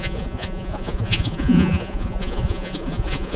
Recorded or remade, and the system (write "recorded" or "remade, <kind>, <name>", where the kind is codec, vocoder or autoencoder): remade, vocoder, Vocos